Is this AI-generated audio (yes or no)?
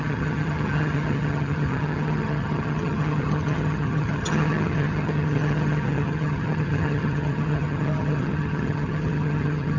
yes